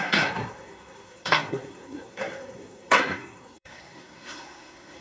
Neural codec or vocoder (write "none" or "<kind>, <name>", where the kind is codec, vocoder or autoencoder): codec, SNAC